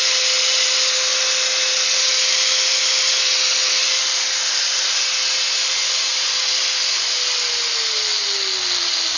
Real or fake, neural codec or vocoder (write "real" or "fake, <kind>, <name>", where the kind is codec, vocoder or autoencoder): real